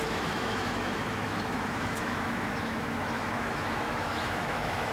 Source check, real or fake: fake